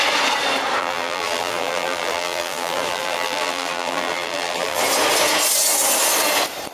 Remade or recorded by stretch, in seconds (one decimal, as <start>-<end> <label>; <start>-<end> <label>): 0.0-0.8 recorded; 0.8-4.8 remade; 4.8-6.7 recorded